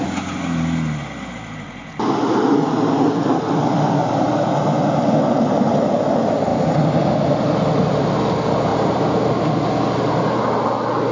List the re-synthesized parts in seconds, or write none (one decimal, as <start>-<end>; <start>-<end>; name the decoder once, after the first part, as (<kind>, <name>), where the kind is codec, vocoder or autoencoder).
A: 4.0-4.8 (vocoder, BigVGAN v2); 8.7-9.3

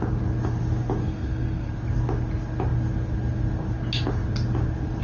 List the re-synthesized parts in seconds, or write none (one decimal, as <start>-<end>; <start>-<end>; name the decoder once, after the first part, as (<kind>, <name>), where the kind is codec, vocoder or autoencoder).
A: 1.0-1.7 (codec, SNAC)

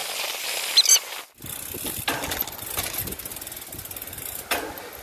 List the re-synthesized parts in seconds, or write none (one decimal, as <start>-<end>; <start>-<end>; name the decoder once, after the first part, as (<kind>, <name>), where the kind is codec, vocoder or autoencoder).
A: none

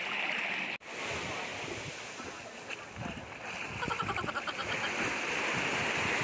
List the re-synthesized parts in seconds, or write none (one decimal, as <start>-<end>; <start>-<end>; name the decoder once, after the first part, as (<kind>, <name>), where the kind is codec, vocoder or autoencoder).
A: none